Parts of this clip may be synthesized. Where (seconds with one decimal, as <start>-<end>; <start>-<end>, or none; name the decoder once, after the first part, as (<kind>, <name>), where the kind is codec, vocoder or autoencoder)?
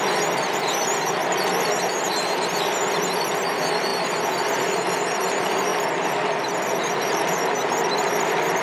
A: none